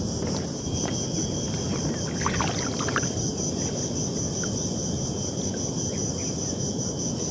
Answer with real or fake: real